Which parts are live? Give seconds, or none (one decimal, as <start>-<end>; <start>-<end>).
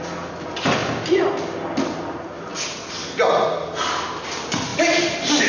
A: 0.0-4.7